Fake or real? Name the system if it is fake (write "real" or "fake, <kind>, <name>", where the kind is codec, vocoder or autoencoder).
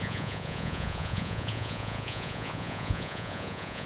fake, vocoder, Vocos